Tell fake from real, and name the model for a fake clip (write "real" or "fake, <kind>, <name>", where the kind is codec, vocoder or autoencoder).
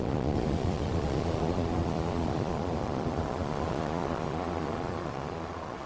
fake, vocoder, Vocos